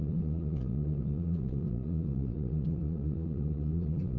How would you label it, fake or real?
fake